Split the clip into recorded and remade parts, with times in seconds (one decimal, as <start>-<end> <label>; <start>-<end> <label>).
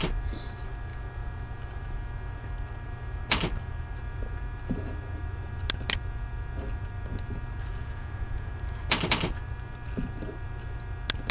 0.0-7.8 recorded; 7.8-8.5 remade; 8.5-11.3 recorded